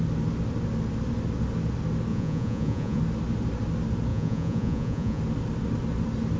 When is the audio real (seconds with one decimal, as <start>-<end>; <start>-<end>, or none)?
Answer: 0.0-2.1; 3.0-4.1; 5.2-6.4